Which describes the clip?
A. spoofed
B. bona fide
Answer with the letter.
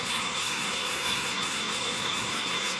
A